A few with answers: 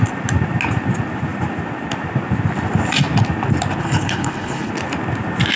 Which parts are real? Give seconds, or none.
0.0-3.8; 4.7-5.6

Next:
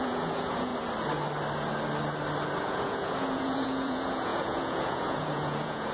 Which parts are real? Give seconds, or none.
0.7-2.6

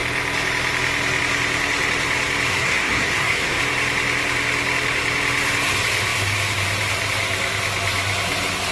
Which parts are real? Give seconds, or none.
0.0-2.5; 3.6-8.7

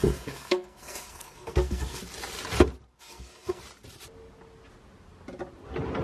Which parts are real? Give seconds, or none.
2.0-2.9; 3.6-6.0

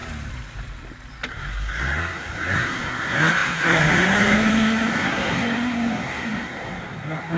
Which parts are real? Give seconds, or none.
0.0-1.3

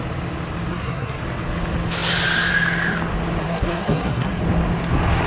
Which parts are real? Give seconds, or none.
0.0-0.7; 1.2-3.4; 4.4-5.3

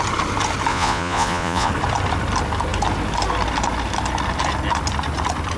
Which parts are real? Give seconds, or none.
0.0-0.7; 1.7-5.6